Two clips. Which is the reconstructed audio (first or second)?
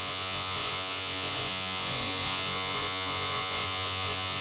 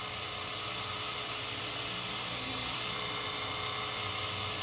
first